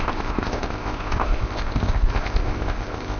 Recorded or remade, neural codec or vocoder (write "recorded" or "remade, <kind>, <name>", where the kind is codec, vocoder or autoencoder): remade, codec, ZipCodec